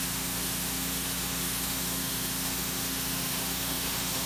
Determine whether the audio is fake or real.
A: fake